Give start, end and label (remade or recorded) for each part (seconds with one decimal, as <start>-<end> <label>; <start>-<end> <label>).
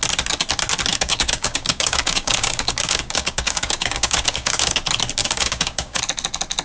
0.0-0.9 recorded; 0.9-4.8 remade; 4.8-5.2 recorded; 5.2-6.0 remade; 6.0-6.6 recorded